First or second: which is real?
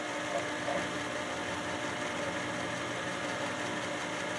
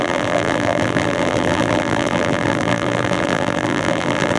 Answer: first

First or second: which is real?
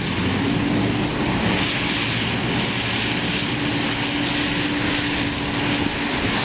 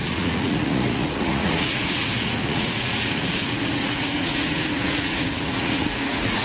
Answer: first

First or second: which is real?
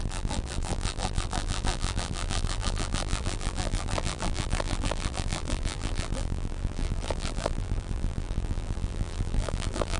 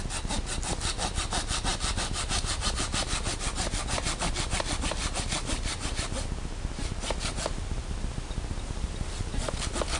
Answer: second